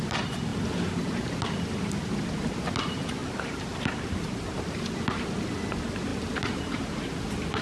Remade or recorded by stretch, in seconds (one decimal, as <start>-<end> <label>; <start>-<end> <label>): 0.0-3.2 recorded; 3.2-4.7 remade; 4.7-7.6 recorded